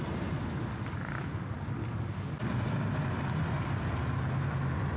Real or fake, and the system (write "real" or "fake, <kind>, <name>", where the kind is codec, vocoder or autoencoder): real